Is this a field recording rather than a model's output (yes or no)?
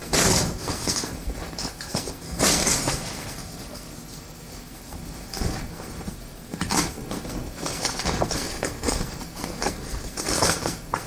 no